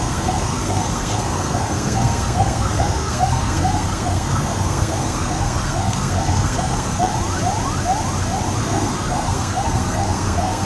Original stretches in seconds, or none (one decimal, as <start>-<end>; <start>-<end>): 7.1-8.6